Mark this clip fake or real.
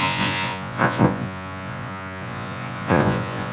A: fake